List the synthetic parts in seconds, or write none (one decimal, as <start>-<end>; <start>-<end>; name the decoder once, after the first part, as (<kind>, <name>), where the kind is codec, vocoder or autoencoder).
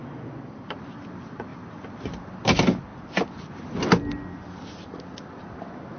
none